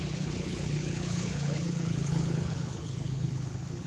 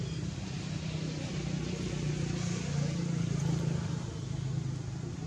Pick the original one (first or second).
second